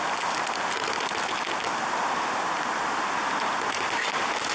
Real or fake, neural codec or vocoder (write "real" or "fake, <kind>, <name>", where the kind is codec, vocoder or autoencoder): real